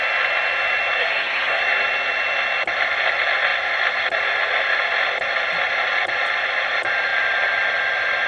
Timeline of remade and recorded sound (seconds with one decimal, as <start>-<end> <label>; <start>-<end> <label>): 0.0-1.0 recorded; 1.0-1.6 remade; 1.6-8.3 recorded